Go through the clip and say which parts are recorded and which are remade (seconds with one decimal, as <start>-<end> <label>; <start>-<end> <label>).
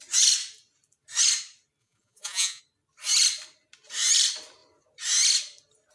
0.0-1.8 recorded; 1.8-2.6 remade; 2.6-5.9 recorded